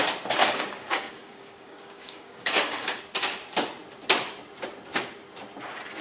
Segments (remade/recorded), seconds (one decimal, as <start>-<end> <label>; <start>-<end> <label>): 0.0-0.4 recorded; 0.4-3.0 remade; 3.0-6.0 recorded